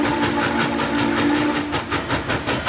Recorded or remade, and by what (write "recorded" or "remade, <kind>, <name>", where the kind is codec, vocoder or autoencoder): recorded